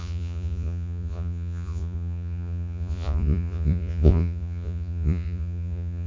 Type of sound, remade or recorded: remade